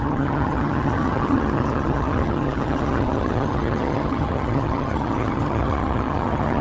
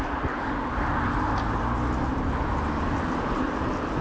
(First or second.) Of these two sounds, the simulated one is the first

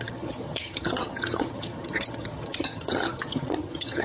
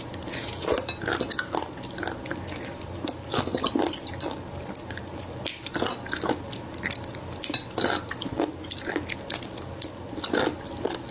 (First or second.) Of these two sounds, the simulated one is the first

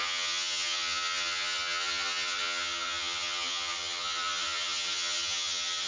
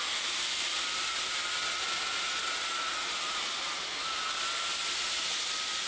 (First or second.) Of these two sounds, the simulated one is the first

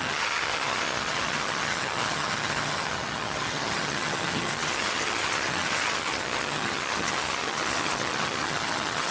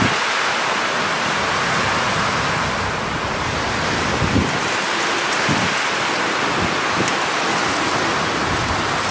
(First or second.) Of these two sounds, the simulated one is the first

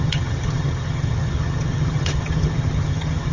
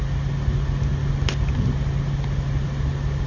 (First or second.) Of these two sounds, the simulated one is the first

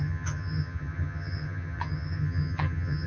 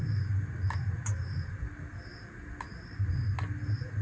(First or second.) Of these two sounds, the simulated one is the first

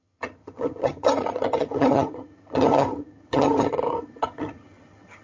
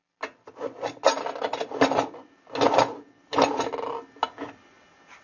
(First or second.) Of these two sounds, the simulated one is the first